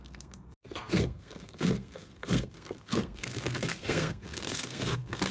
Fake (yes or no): yes